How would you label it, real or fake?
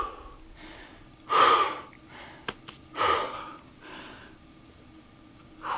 real